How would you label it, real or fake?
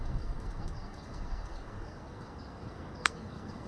fake